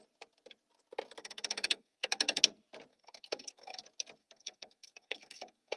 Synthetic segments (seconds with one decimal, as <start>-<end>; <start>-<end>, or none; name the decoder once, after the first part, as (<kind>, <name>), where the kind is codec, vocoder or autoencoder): 1.2-2.4 (codec, SNAC); 2.9-3.8; 4.2-5.8